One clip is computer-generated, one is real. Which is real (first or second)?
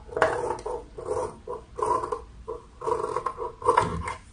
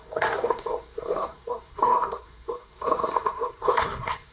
first